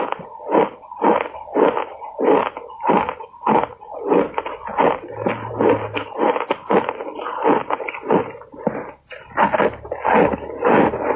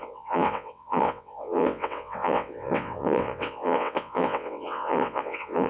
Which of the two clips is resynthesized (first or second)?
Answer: second